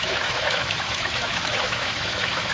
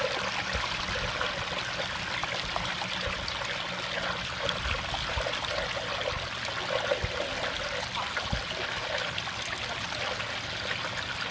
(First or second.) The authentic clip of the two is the second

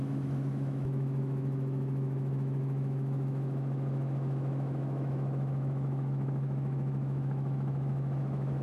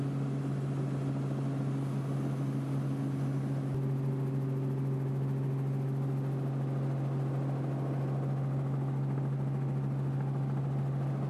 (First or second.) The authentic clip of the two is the second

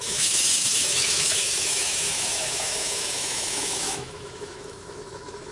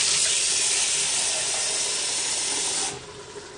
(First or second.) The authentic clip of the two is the second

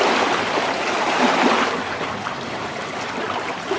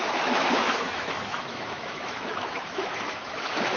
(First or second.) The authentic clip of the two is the first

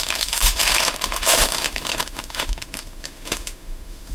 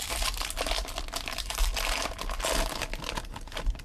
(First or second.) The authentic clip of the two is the second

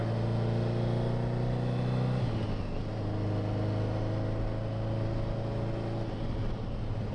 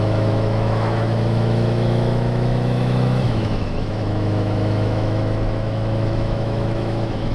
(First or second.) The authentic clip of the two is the first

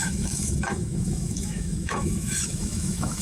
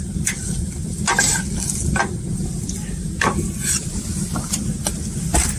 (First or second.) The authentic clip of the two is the second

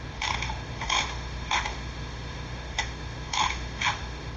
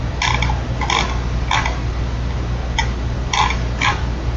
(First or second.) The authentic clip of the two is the second